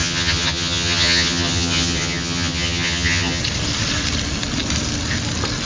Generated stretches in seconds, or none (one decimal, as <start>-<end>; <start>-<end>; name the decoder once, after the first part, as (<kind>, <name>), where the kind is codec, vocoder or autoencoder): 0.0-3.4 (vocoder, HiFi-GAN)